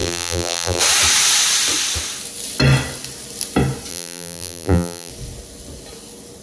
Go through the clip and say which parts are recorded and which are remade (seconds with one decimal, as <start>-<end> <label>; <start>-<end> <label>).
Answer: 0.0-0.8 remade; 0.8-3.9 recorded; 3.9-5.1 remade; 5.1-6.4 recorded